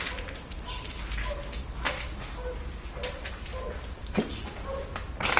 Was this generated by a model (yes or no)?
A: no